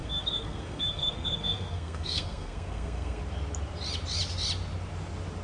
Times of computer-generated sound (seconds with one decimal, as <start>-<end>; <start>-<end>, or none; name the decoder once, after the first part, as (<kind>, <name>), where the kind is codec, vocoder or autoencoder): 0.0-3.2 (codec, SNAC)